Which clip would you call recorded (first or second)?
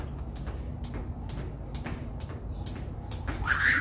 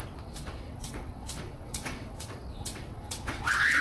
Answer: first